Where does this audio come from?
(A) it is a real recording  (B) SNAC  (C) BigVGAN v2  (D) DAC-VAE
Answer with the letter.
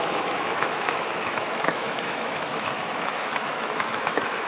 D